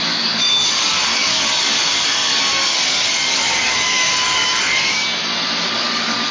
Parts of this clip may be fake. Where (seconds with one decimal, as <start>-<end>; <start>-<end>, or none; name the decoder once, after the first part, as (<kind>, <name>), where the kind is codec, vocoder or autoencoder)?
0.0-5.0 (codec, DAC); 5.7-6.3